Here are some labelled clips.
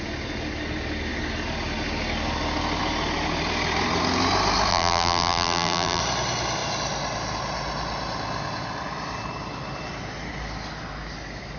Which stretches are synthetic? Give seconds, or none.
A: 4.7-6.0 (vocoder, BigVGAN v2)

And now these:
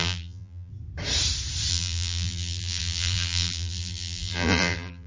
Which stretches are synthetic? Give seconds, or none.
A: 0.0-0.7 (vocoder, BigVGAN v2); 1.7-5.1